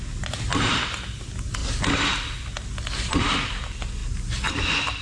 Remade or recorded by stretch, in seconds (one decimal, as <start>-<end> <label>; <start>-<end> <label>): 0.0-5.0 recorded